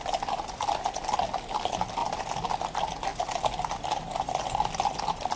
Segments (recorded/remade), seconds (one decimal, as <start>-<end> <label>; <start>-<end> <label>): 0.0-5.4 recorded